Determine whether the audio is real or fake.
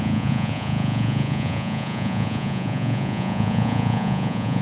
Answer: fake